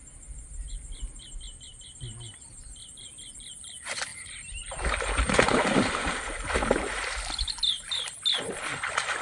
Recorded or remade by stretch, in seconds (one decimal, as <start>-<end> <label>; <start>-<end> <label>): 0.0-4.1 recorded; 4.1-6.2 remade; 6.2-9.2 recorded